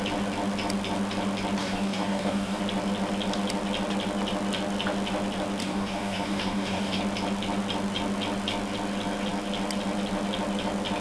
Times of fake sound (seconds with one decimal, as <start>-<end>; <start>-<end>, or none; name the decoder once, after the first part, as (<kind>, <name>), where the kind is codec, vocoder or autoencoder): 1.6-2.6 (codec, DAC); 5.6-7.0